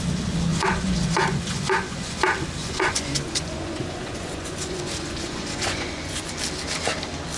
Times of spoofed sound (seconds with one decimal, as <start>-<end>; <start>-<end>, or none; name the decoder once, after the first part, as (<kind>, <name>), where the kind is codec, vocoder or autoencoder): 0.5-2.2 (vocoder, Vocos); 2.6-6.3